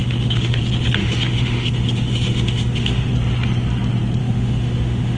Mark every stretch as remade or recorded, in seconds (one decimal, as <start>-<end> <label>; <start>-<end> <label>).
0.0-0.6 remade; 0.6-1.0 recorded; 1.0-3.1 remade; 3.1-4.2 recorded; 4.2-5.2 remade